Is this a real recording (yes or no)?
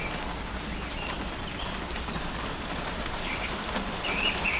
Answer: no